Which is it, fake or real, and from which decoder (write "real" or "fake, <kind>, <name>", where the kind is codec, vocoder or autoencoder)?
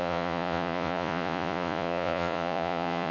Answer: fake, vocoder, Vocos